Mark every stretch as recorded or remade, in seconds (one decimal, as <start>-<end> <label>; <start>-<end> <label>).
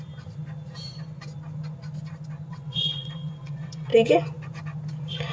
0.0-2.5 recorded; 2.5-3.9 remade; 3.9-5.3 recorded